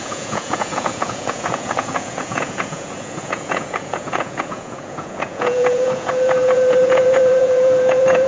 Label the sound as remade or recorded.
remade